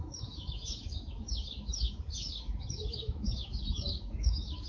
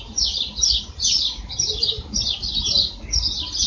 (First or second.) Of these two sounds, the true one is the second